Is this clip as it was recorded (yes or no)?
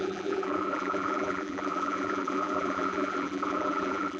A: no